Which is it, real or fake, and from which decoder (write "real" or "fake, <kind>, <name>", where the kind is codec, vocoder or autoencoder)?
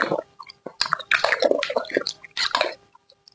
real